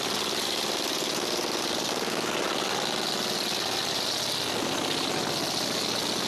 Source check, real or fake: real